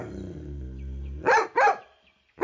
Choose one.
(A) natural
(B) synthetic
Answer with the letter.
A